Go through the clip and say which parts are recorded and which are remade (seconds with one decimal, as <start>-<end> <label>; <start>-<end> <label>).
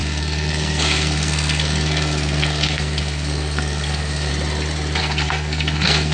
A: 0.0-4.3 remade; 4.3-5.0 recorded; 5.0-6.1 remade